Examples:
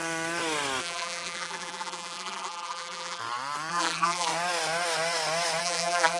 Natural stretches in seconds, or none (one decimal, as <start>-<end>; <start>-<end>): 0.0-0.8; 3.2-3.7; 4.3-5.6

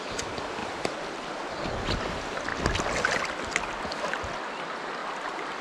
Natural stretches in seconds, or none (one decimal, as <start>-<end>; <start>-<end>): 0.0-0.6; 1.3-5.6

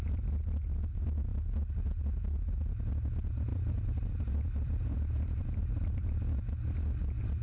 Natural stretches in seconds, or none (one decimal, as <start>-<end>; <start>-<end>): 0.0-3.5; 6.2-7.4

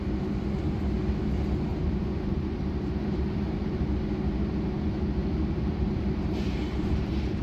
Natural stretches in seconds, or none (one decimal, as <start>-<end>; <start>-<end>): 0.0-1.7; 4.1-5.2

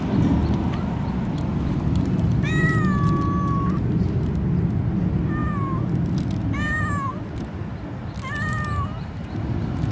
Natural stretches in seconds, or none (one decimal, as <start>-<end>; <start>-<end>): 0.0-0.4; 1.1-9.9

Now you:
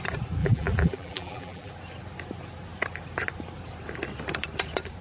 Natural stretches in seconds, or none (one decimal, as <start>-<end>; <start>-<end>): 0.0-0.4; 1.7-5.0

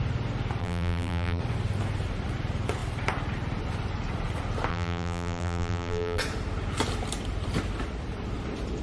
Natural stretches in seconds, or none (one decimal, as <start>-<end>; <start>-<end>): 0.0-0.6; 1.4-4.7; 6.2-8.8

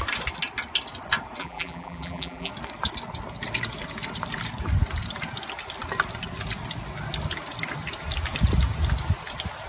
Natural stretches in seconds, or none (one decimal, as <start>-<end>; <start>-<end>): 0.0-1.4; 2.5-9.7